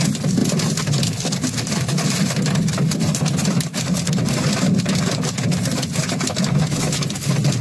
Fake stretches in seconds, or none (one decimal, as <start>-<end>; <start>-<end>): 0.4-5.0